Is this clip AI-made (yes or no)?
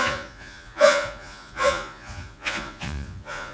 yes